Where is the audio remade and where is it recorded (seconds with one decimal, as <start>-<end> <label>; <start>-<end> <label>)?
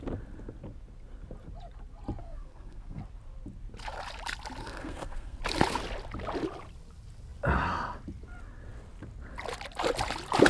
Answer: 0.0-2.2 recorded; 2.2-3.0 remade; 3.0-4.6 recorded; 4.6-5.4 remade; 5.4-10.5 recorded